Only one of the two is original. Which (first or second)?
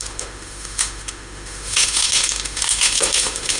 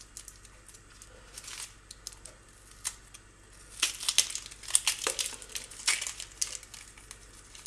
second